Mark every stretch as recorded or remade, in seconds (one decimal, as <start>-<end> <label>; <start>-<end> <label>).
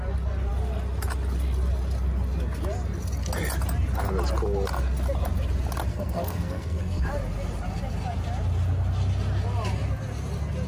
0.0-5.9 recorded; 5.9-7.1 remade; 7.1-10.7 recorded